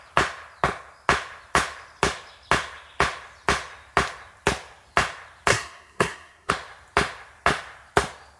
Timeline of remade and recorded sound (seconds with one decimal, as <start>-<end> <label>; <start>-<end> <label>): 0.0-5.5 recorded; 5.5-6.5 remade; 6.5-8.4 recorded